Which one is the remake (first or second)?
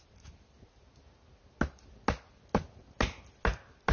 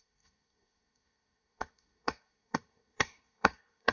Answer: second